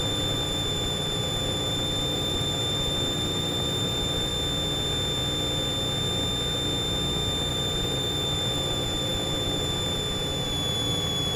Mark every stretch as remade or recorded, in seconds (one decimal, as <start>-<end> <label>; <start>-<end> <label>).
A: 0.0-4.3 remade; 4.3-7.5 recorded; 7.5-11.4 remade